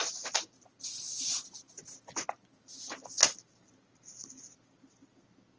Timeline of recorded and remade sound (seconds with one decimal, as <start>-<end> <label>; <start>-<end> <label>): 0.0-1.2 remade; 1.2-2.6 recorded; 2.6-4.6 remade; 4.6-5.6 recorded